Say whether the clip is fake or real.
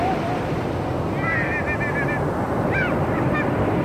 real